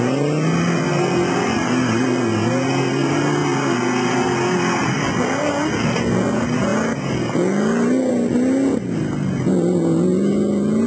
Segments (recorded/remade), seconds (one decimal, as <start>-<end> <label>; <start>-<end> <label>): 0.0-10.9 recorded